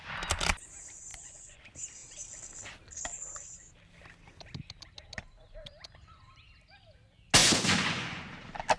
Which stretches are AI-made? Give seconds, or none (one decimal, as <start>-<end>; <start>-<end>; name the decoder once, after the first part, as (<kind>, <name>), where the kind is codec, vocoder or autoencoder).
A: 1.1-1.6 (vocoder, Vocos); 7.4-8.3